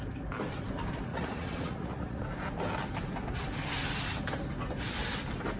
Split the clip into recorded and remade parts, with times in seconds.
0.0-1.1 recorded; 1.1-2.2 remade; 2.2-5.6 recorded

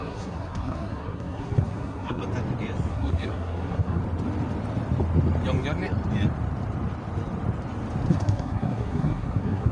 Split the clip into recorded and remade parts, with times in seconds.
0.0-2.2 remade; 2.2-2.9 recorded; 2.9-4.0 remade; 4.0-8.1 recorded; 8.1-9.7 remade

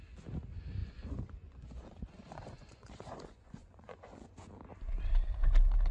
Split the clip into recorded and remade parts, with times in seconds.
0.0-0.8 recorded; 0.8-4.3 remade; 4.3-5.9 recorded